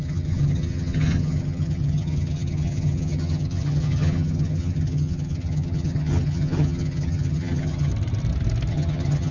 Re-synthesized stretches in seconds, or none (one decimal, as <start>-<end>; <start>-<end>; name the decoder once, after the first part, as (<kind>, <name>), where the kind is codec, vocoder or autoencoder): 0.0-7.9 (vocoder, HiFi-GAN); 8.7-9.3

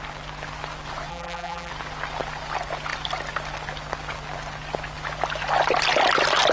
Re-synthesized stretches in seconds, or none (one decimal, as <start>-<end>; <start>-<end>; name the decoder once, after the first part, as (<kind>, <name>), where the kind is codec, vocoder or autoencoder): 1.1-1.7 (vocoder, BigVGAN v2)

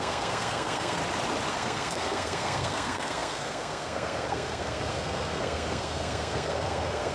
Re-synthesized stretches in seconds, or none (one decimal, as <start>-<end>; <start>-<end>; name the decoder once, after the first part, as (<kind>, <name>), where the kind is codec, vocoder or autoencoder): 0.0-1.0 (codec, SNAC); 1.5-7.1

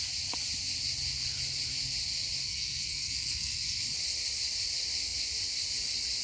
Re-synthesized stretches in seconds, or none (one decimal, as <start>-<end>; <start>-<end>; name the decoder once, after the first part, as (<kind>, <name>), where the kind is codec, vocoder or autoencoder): 2.4-3.8 (codec, SNAC)